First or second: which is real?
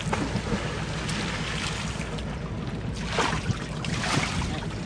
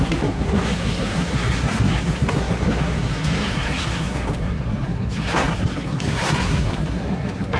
first